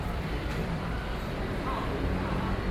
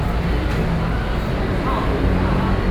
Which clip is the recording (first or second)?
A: second